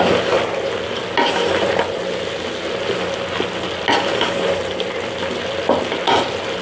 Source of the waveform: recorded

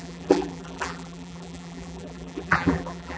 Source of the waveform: remade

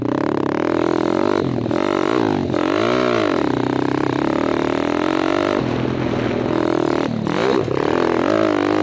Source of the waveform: recorded